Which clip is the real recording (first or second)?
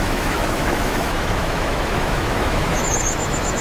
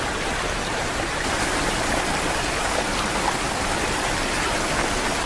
second